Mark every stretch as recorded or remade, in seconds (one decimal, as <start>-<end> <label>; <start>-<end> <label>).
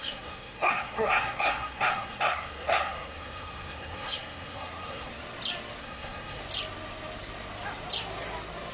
0.0-5.1 remade; 5.1-5.8 recorded; 5.8-6.4 remade; 6.4-8.7 recorded